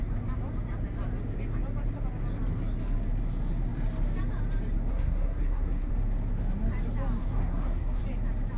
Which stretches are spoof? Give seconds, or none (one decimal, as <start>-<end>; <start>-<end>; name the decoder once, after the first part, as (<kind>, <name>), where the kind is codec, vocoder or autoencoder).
4.9-5.9 (codec, SNAC); 7.2-8.0